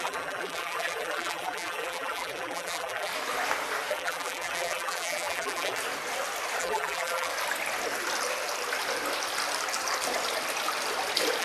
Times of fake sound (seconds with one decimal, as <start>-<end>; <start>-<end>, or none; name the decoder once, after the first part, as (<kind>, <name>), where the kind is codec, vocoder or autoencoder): 0.0-3.1 (vocoder, BigVGAN v2); 3.9-5.8; 6.6-7.3